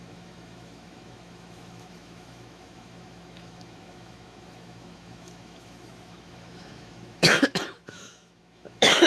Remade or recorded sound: remade